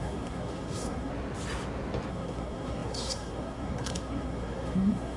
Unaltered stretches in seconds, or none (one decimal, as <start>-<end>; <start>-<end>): 1.1-2.1